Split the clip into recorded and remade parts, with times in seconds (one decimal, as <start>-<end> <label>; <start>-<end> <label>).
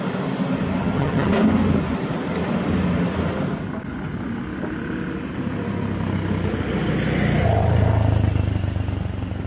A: 0.0-0.8 recorded; 0.8-1.3 remade; 1.3-9.5 recorded